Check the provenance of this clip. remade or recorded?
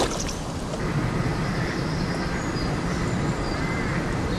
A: recorded